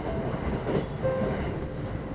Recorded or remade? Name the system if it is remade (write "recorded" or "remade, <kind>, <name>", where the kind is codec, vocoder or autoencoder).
recorded